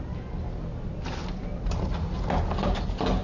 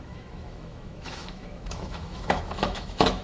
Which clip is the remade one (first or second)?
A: second